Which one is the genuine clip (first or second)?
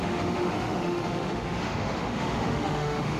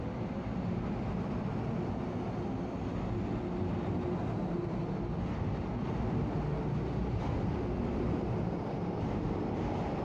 second